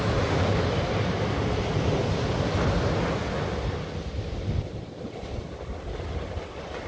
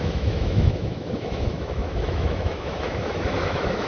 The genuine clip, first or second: first